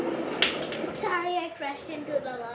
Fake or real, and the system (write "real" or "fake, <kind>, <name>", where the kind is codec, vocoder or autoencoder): real